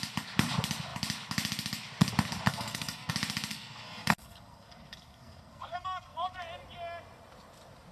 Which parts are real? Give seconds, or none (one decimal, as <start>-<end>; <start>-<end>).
0.0-2.5; 3.1-3.5; 6.4-7.9